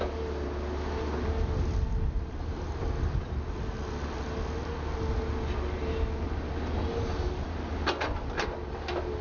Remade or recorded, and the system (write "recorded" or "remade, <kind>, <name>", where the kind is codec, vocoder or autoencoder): recorded